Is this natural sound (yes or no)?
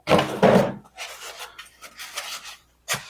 yes